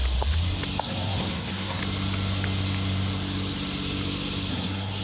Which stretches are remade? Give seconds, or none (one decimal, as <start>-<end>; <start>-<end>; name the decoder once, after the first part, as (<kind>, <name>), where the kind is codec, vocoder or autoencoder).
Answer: 0.8-1.8 (codec, SNAC); 4.5-5.0